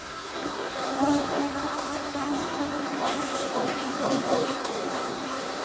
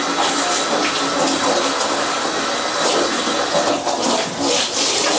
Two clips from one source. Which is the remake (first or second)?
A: first